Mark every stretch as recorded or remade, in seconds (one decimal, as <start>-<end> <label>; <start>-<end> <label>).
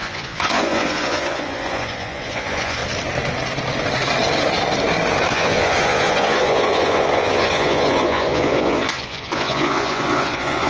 0.0-2.8 remade; 2.8-5.3 recorded; 5.3-10.7 remade